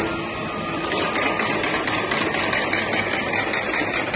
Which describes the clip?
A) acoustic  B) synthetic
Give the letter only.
A